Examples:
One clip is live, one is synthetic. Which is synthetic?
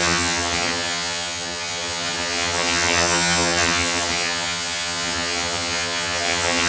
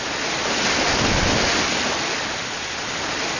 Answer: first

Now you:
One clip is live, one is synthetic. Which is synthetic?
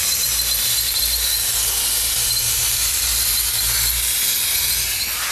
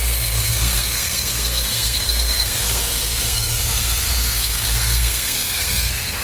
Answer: second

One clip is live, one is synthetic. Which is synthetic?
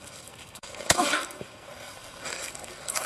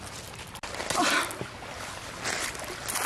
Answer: first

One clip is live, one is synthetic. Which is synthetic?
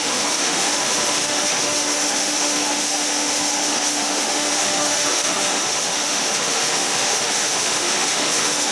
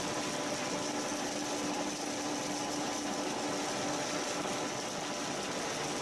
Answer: first